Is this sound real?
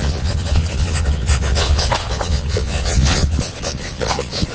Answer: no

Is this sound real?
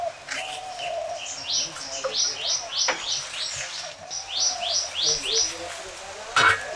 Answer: yes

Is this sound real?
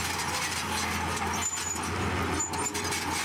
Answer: yes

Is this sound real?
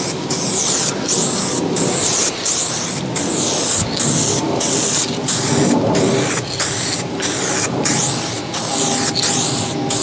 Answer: yes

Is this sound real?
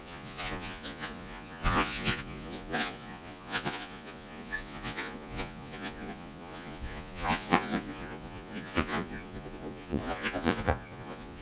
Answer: no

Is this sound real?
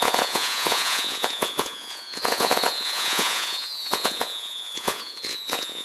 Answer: no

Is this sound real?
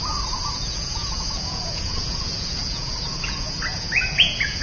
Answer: no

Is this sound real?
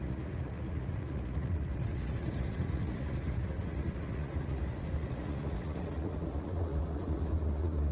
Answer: no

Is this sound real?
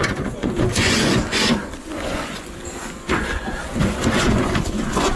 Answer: no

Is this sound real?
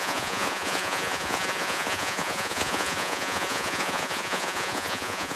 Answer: no